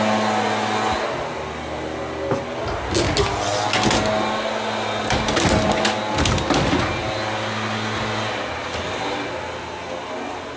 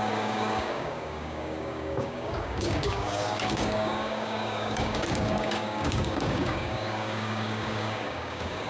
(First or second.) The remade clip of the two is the second